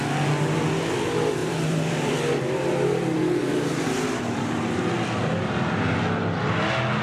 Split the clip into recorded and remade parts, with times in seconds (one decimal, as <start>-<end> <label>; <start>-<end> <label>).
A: 0.0-1.4 recorded; 1.4-2.1 remade; 2.1-3.4 recorded; 3.4-4.9 remade; 4.9-7.0 recorded